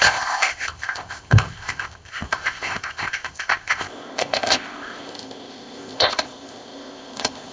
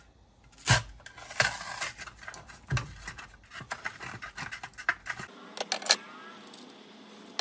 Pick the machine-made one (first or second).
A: first